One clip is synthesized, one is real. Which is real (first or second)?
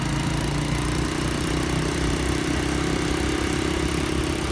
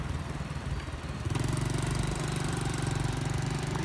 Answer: second